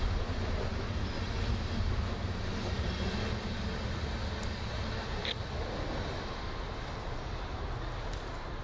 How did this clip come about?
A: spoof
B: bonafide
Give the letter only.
B